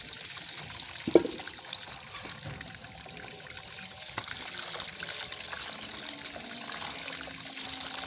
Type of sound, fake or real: real